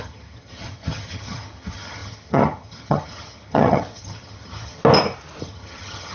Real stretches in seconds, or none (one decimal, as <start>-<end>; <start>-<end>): 4.8-5.4